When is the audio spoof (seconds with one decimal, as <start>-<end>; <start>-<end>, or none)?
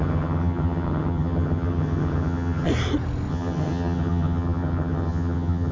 0.0-2.7; 3.3-5.7